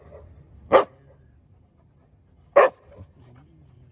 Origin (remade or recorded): recorded